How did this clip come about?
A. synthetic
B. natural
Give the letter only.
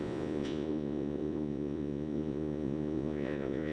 A